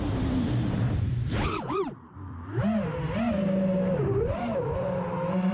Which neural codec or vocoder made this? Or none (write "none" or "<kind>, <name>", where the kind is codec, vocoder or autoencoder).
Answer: vocoder, BigVGAN v2